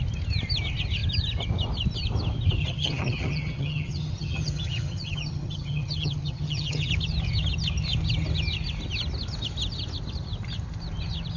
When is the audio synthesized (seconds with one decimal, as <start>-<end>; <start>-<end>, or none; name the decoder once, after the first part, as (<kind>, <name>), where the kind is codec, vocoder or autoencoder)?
2.6-6.9 (vocoder, HiFi-GAN)